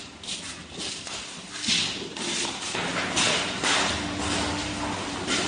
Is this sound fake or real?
real